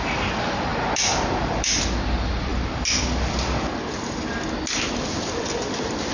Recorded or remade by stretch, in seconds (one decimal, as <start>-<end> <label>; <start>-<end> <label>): 0.0-6.1 recorded